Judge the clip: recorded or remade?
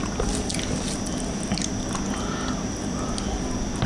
recorded